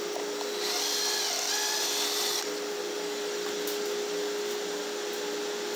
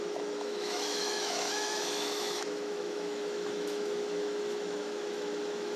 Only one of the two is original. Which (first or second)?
first